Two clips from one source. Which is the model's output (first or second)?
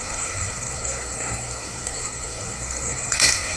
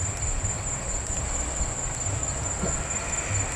first